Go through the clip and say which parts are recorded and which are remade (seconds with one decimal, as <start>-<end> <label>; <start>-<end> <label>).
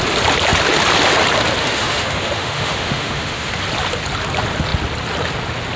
0.0-1.6 recorded; 1.6-3.5 remade; 3.5-5.8 recorded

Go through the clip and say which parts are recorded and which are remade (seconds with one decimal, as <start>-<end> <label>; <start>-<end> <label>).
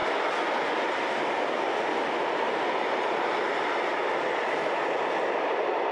0.0-5.9 recorded